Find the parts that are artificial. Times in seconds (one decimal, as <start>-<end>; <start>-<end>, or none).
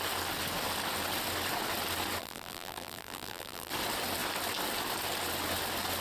2.2-3.7